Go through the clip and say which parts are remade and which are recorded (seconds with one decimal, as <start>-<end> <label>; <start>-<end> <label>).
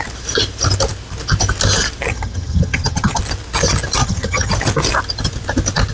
0.0-2.1 recorded; 2.1-3.2 remade; 3.2-4.0 recorded; 4.0-4.5 remade; 4.5-5.9 recorded